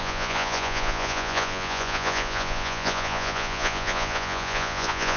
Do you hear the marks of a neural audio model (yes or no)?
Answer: yes